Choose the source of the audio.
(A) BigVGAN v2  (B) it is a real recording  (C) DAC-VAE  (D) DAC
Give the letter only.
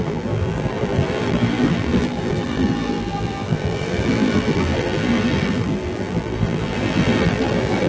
A